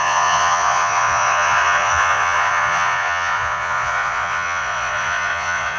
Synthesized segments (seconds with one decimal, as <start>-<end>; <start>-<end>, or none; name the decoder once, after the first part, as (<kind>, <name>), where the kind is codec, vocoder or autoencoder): 0.0-5.8 (vocoder, Vocos)